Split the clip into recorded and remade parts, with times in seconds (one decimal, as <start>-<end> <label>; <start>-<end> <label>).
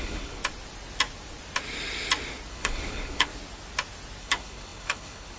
0.0-0.4 remade; 0.4-2.5 recorded; 2.5-3.3 remade; 3.3-4.2 recorded; 4.2-5.4 remade